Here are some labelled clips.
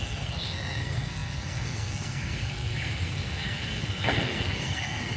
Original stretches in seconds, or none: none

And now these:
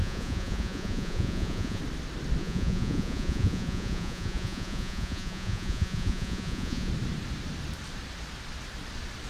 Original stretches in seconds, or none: 1.8-2.4; 6.9-9.3

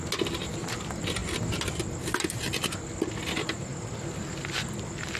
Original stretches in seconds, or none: 0.0-5.2

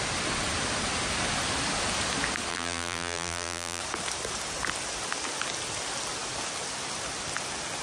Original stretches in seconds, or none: 0.0-2.5; 3.8-7.8

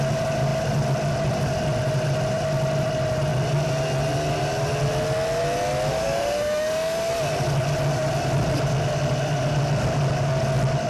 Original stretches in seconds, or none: 0.0-5.9; 7.1-10.9